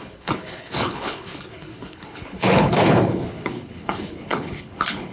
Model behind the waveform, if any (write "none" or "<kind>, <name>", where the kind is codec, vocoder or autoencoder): codec, HILCodec